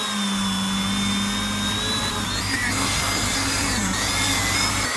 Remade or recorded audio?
recorded